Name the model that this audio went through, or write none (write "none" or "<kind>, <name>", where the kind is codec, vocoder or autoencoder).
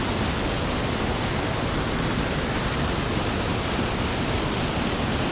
none